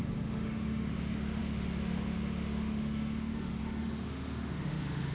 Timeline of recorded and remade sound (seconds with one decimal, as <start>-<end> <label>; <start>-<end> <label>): 0.0-5.1 remade